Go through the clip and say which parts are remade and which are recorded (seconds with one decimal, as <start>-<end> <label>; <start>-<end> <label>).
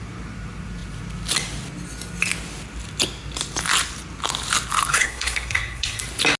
0.0-4.9 recorded; 4.9-6.0 remade; 6.0-6.4 recorded